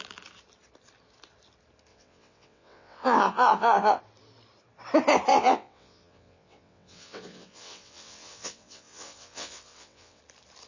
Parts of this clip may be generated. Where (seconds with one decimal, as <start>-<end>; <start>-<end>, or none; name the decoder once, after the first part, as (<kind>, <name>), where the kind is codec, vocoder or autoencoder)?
1.9-4.0 (vocoder, WaveNeXt); 5.3-10.2